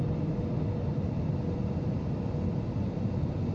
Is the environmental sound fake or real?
real